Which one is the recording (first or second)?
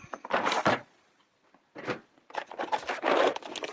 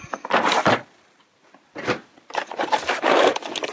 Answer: first